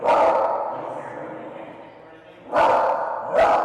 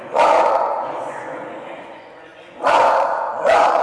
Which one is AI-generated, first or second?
second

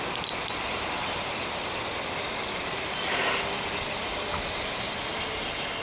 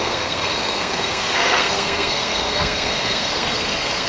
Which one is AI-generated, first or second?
second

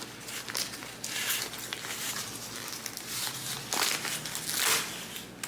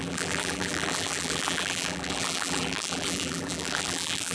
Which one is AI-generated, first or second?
second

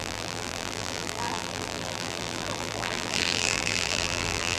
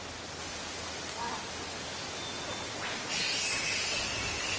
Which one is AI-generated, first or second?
first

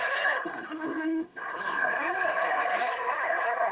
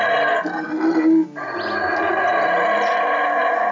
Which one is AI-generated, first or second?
first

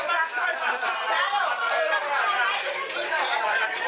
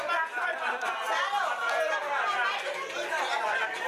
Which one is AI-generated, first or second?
first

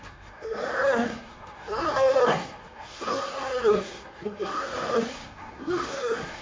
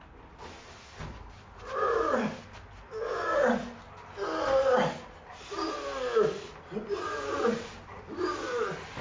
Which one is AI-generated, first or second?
first